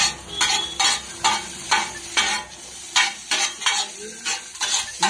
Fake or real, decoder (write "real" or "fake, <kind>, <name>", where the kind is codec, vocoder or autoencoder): fake, vocoder, BigVGAN v2